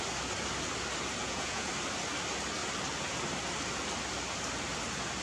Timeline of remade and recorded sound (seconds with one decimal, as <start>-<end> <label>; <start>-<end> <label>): 0.0-1.2 recorded; 1.2-1.7 remade; 1.7-5.2 recorded

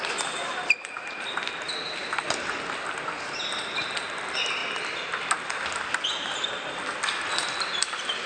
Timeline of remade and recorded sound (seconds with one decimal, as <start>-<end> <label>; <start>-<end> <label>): 0.0-8.3 recorded